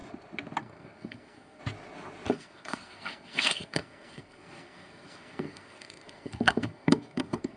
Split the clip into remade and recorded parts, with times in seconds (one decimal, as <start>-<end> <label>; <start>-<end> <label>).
0.0-0.6 recorded; 0.6-1.6 remade; 1.6-2.3 recorded; 2.3-7.6 remade